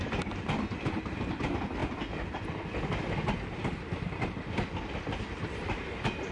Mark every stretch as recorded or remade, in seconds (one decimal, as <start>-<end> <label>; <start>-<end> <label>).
0.0-6.3 recorded